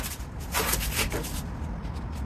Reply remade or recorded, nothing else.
recorded